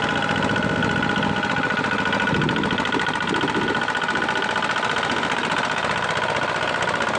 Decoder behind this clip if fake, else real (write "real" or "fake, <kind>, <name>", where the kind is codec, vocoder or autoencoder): real